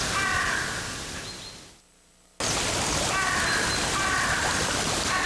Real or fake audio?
real